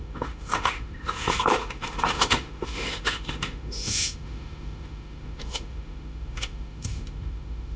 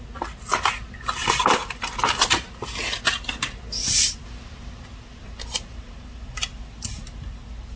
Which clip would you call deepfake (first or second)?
first